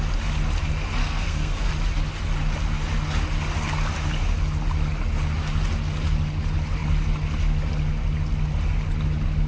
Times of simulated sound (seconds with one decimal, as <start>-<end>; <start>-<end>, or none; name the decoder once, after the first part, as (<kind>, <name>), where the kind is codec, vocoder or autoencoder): 1.0-1.7 (codec, SNAC)